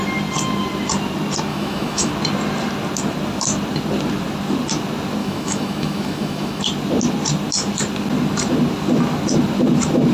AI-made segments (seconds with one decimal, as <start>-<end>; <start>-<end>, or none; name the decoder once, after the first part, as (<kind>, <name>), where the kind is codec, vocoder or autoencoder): 1.5-2.1 (autoencoder, DAC-VAE); 5.2-6.6